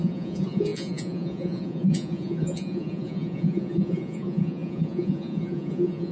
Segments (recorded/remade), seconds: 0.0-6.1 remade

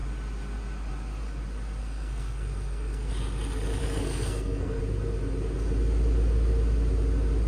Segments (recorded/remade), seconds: 0.0-1.8 recorded; 1.8-3.1 remade; 3.1-3.8 recorded; 3.8-4.8 remade; 4.8-7.5 recorded

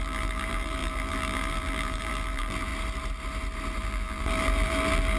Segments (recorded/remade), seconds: 0.0-2.7 remade; 2.7-3.8 recorded; 3.8-5.2 remade

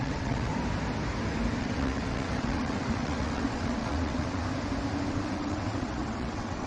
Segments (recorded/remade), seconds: 0.0-0.5 remade; 0.5-1.6 recorded; 1.6-4.4 remade; 4.4-5.1 recorded; 5.1-6.7 remade

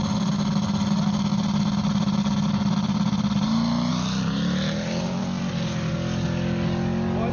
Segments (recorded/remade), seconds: 0.0-7.3 recorded

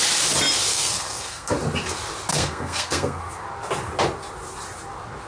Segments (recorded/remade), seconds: 0.0-0.7 recorded; 0.7-1.5 remade; 1.5-2.3 recorded; 2.3-3.2 remade; 3.2-5.3 recorded

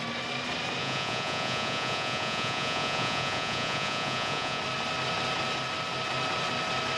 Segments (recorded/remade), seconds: 0.0-0.8 recorded; 0.8-4.6 remade; 4.6-7.0 recorded